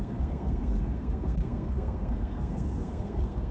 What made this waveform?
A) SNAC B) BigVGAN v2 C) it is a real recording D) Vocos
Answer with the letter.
A